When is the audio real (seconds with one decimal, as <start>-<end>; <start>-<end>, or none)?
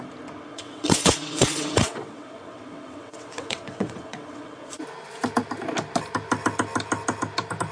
0.0-0.5; 4.7-7.7